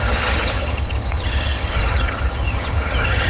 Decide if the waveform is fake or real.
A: fake